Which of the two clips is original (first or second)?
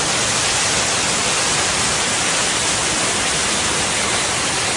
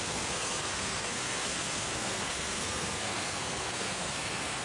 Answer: first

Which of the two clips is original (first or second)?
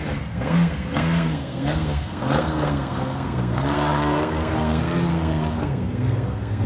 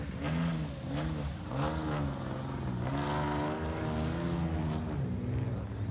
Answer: second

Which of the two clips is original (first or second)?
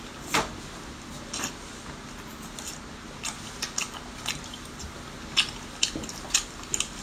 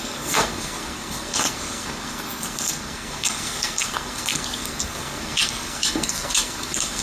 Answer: first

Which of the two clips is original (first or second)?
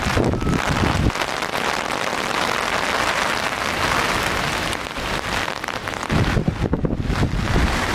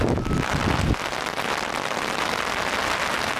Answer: second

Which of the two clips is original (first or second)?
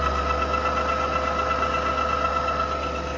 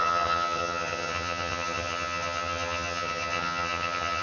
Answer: first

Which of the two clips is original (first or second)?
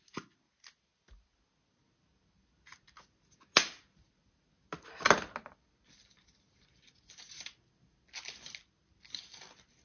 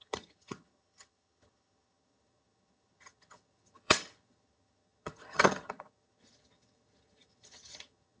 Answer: first